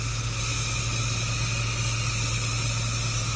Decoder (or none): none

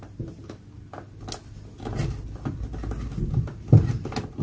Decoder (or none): none